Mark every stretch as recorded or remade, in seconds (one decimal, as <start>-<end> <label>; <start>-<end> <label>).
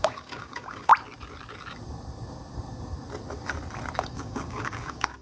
0.0-0.9 remade; 0.9-4.0 recorded; 4.0-5.2 remade